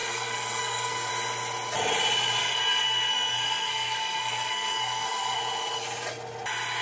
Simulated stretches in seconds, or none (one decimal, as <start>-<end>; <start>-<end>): 0.0-1.1; 2.4-5.4